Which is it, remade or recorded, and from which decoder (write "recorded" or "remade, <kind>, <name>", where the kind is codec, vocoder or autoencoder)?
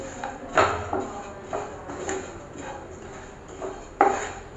recorded